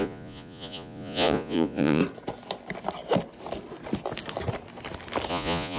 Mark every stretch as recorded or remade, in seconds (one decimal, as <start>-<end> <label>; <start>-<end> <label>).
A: 0.0-2.0 remade; 2.0-5.3 recorded; 5.3-5.8 remade